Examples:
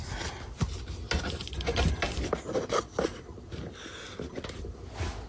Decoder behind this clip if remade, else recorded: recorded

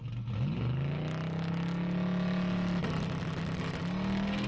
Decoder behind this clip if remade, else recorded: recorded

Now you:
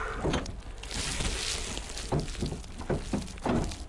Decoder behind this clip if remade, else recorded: recorded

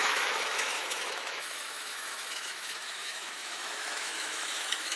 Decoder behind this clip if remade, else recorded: remade, autoencoder, DAC-VAE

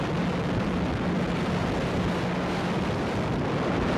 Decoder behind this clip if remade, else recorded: recorded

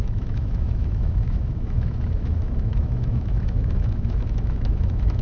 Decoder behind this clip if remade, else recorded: remade, autoencoder, DAC-VAE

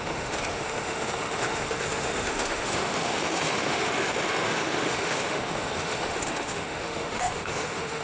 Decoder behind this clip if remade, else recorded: remade, autoencoder, DAC-VAE